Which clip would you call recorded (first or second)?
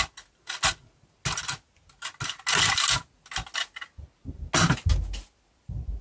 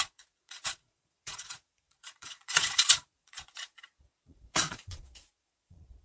first